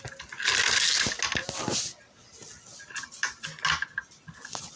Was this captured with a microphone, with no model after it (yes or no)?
yes